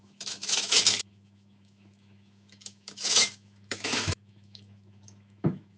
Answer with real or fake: fake